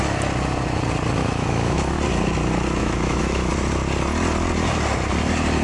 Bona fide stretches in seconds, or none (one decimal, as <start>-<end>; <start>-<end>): 0.0-1.2; 1.9-2.8; 3.5-5.6